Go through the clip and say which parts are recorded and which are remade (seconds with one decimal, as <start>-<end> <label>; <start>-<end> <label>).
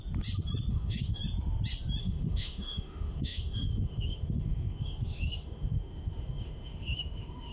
0.0-0.7 recorded; 0.7-1.2 remade; 1.2-2.0 recorded; 2.0-7.5 remade